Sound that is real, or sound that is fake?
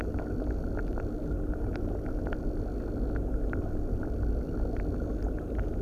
real